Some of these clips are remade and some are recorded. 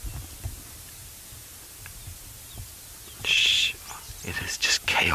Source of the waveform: recorded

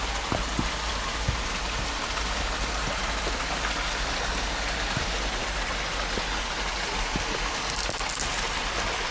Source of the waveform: recorded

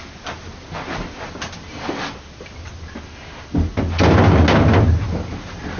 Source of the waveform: recorded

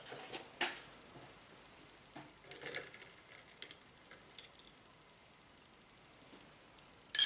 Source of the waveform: recorded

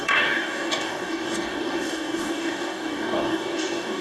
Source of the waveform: remade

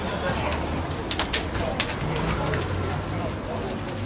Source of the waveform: recorded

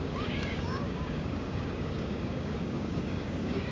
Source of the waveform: remade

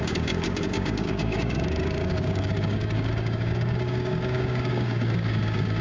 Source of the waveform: remade